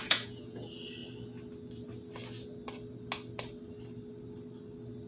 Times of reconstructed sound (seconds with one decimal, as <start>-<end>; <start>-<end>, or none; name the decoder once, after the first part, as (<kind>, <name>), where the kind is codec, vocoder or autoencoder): 0.0-0.6 (vocoder, Vocos)